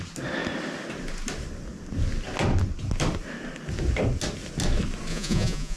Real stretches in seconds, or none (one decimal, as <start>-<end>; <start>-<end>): 0.0-5.1